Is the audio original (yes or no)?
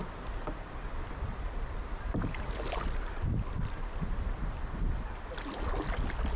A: yes